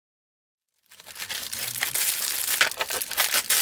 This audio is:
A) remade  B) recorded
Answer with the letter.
B